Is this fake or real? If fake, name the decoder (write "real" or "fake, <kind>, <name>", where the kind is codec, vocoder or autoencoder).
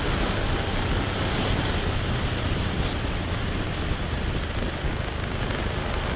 real